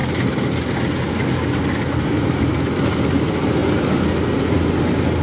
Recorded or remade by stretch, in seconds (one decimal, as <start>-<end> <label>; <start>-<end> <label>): 0.0-5.2 recorded